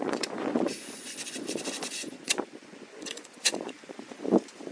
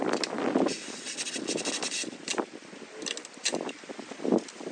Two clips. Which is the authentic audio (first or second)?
second